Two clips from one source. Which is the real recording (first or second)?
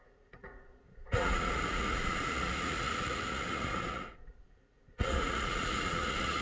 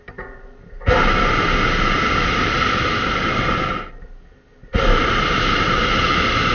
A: second